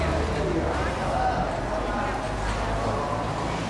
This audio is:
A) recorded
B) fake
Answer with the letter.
A